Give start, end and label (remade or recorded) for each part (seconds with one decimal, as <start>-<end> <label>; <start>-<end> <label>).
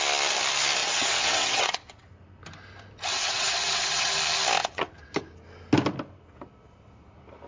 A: 0.0-0.8 recorded; 0.8-2.1 remade; 2.1-3.1 recorded; 3.1-4.1 remade; 4.1-4.6 recorded; 4.6-5.1 remade; 5.1-7.5 recorded